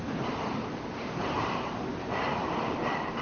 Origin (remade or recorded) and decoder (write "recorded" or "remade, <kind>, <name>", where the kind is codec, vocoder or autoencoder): remade, vocoder, BigVGAN v2